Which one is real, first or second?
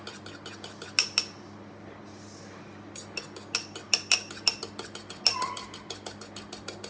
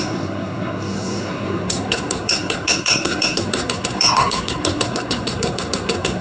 first